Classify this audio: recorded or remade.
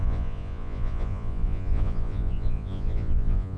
remade